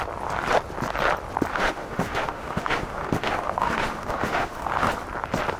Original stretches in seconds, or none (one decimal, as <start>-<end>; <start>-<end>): 0.0-1.5; 4.9-5.6